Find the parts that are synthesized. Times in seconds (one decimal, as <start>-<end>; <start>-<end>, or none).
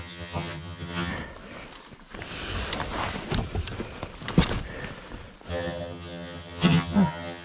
0.0-1.1; 5.5-7.4